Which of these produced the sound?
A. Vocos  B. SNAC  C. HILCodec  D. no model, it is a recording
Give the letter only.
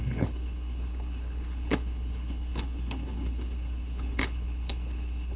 C